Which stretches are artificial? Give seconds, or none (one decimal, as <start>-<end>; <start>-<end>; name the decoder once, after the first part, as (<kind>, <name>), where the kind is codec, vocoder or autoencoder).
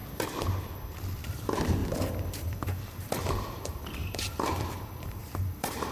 1.3-1.8 (vocoder, BigVGAN v2); 2.5-5.9